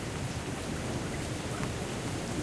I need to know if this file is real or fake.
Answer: fake